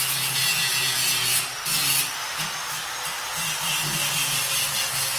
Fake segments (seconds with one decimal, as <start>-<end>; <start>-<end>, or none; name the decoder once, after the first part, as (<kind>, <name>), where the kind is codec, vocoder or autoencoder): 1.8-2.4 (vocoder, BigVGAN v2); 3.3-4.8